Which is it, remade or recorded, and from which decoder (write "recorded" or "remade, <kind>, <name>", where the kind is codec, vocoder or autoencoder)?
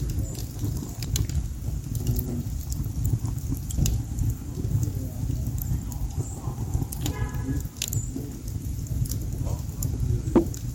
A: recorded